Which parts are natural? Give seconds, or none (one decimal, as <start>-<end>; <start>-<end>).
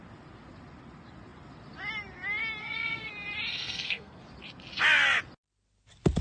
0.0-2.6; 3.1-3.5; 4.2-6.2